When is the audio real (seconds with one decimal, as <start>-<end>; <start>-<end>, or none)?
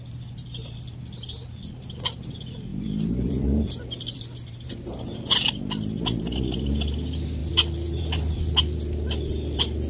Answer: 0.0-2.7; 4.7-7.4; 8.4-9.9